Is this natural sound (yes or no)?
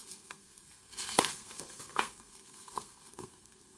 no